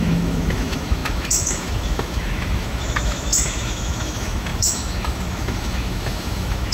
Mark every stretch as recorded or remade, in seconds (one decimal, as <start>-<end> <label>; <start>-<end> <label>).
0.0-6.7 remade